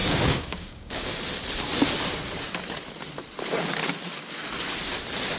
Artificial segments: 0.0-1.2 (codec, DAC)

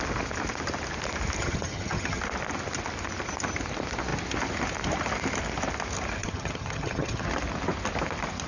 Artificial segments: 1.4-2.2 (vocoder, HiFi-GAN); 6.2-7.3

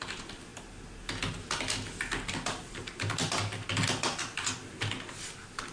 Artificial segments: none

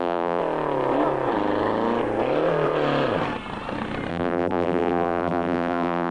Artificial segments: 0.0-0.4 (vocoder, BigVGAN v2); 4.1-6.1

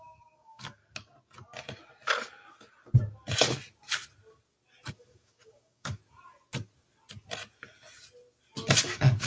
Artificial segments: 0.0-0.8 (codec, DAC); 4.9-6.0; 8.8-9.3